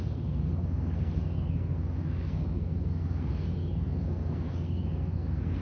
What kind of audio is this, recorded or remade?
remade